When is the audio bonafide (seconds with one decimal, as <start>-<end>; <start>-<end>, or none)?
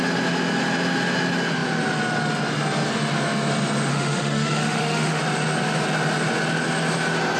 0.0-3.9; 5.2-7.4